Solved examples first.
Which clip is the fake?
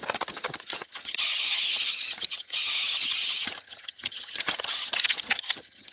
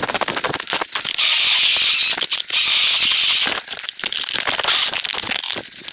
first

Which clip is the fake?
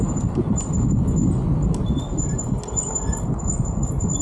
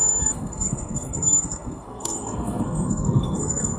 second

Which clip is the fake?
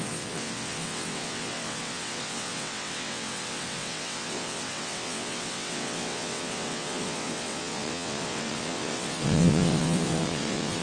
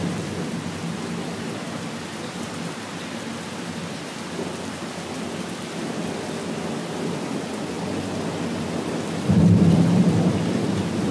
first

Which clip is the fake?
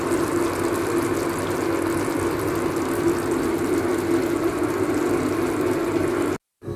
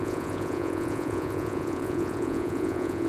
second